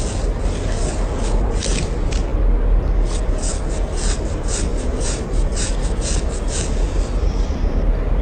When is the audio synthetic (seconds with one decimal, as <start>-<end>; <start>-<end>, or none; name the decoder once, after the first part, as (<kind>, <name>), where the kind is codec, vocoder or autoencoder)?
4.7-5.8 (vocoder, BigVGAN v2)

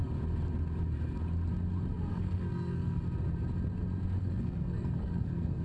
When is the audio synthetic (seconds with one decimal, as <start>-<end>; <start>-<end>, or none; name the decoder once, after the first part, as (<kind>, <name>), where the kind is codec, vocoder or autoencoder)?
2.1-3.0 (codec, SNAC); 4.2-5.6

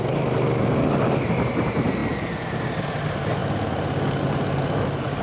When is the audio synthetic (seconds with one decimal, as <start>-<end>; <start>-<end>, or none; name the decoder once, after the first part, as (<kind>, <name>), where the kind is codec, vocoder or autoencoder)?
none

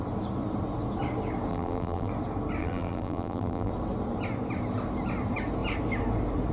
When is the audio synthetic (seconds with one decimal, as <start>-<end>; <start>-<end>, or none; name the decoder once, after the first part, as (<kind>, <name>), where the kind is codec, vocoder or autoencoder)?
1.5-2.1 (vocoder, BigVGAN v2); 2.6-3.7

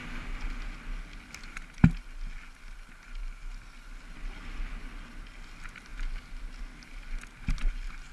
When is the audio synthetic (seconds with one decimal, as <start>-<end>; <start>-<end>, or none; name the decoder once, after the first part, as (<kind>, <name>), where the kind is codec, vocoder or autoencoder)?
none

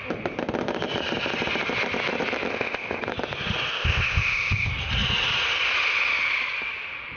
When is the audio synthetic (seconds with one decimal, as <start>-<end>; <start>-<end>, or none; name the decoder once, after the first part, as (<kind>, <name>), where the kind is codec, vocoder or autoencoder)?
2.5-3.0 (codec, ZipCodec); 3.7-4.7

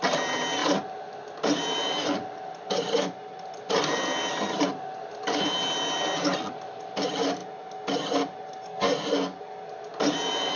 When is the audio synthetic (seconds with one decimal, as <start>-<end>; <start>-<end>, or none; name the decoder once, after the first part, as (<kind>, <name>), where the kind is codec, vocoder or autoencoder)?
none